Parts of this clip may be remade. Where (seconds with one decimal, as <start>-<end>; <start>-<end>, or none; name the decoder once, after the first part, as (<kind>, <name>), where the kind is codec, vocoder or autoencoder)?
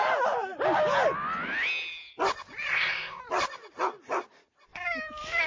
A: 2.7-3.2 (codec, ZipCodec)